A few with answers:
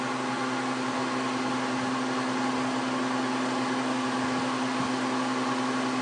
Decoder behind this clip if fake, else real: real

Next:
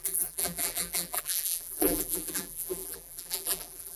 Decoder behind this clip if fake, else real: fake, vocoder, BigVGAN v2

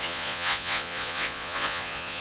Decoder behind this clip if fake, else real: fake, vocoder, Vocos